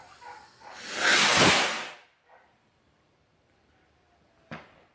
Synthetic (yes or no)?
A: yes